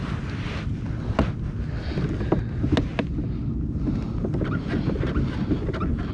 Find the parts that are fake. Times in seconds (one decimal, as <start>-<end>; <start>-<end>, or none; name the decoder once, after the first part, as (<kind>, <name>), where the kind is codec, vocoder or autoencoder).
0.0-1.3 (vocoder, BigVGAN v2)